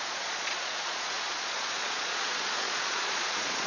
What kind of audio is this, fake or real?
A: fake